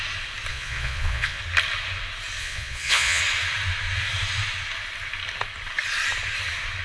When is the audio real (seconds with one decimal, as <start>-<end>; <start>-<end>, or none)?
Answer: 0.0-0.5; 1.4-2.4; 3.2-6.8